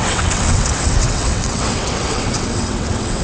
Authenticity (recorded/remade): remade